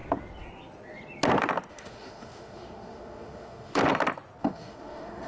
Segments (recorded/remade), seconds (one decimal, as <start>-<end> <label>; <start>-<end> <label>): 0.0-1.7 recorded; 1.7-3.8 remade; 3.8-4.4 recorded; 4.4-5.3 remade